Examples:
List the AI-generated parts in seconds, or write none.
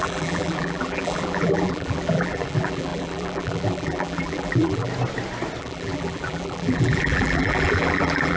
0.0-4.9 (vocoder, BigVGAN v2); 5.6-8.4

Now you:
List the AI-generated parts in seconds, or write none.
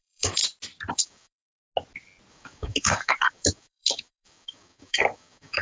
0.0-0.4 (codec, DAC); 0.9-1.6; 2.3-5.6